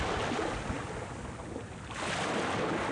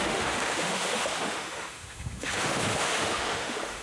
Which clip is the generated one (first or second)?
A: second